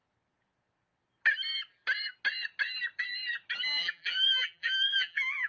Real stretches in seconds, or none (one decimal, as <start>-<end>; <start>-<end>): 0.0-3.8